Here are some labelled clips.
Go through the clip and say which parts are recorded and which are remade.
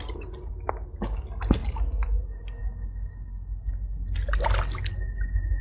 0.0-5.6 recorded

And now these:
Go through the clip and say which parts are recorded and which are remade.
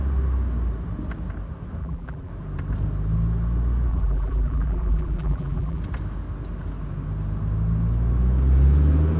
0.0-1.8 recorded; 1.8-2.3 remade; 2.3-3.9 recorded; 3.9-5.8 remade; 5.8-9.2 recorded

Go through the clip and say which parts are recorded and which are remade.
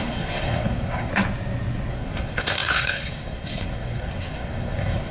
0.0-1.1 remade; 1.1-1.9 recorded; 1.9-5.1 remade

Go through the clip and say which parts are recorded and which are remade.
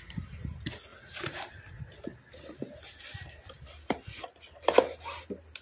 0.0-0.9 recorded; 0.9-1.5 remade; 1.5-5.6 recorded